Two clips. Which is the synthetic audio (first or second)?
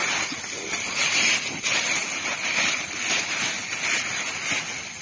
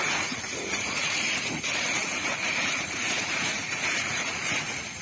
second